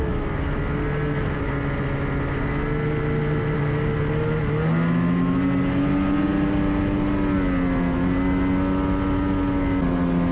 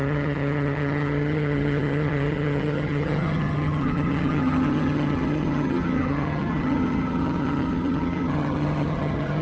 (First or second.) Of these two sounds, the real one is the first